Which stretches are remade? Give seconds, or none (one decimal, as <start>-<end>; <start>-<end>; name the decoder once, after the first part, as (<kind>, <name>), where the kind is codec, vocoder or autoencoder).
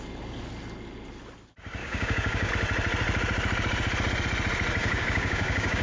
1.8-2.5 (codec, DAC); 4.8-5.8